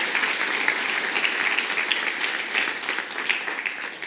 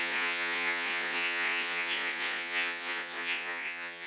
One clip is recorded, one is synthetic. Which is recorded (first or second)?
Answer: first